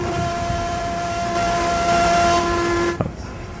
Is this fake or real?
fake